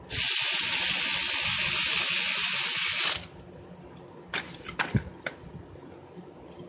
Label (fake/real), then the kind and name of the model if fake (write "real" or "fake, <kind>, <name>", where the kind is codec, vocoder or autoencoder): real